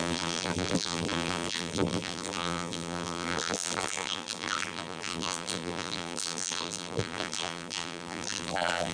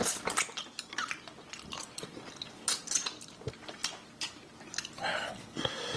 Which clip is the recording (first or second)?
second